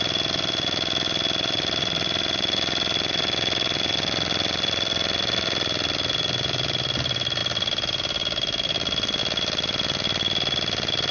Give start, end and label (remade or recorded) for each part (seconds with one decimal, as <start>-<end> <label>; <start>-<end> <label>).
0.0-11.1 recorded